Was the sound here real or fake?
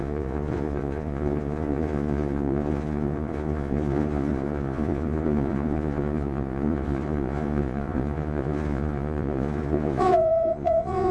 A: fake